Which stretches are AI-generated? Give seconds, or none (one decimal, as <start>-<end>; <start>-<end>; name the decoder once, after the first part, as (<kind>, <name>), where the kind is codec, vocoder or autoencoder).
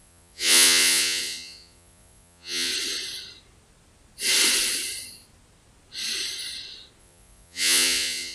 0.0-2.7 (vocoder, Vocos); 7.0-8.3